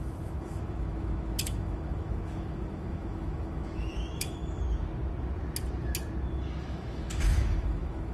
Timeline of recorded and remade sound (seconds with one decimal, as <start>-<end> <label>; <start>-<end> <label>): 0.0-4.4 remade; 4.4-6.6 recorded; 6.6-8.1 remade

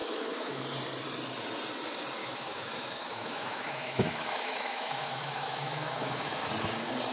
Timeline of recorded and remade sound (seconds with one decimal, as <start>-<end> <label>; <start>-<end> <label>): 0.0-0.6 remade; 0.6-2.2 recorded; 2.2-6.5 remade; 6.5-7.1 recorded

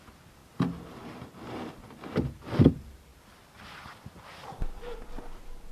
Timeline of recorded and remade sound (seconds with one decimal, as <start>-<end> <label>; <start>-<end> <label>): 0.0-5.7 recorded

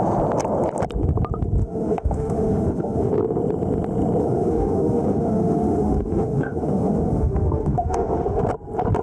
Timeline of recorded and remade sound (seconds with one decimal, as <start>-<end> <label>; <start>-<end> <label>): 0.0-1.6 recorded; 1.6-3.1 remade; 3.1-4.2 recorded; 4.2-8.4 remade; 8.4-9.0 recorded

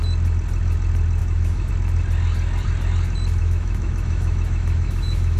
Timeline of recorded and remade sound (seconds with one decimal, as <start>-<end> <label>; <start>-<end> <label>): 0.0-1.2 recorded; 1.2-1.7 remade; 1.7-3.4 recorded; 3.4-5.4 remade